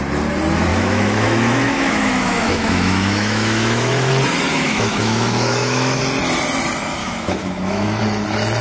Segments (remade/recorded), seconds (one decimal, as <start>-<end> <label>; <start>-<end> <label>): 0.0-0.7 recorded; 0.7-4.1 remade; 4.1-4.5 recorded; 4.5-6.0 remade; 6.0-7.0 recorded; 7.0-8.0 remade; 8.0-8.6 recorded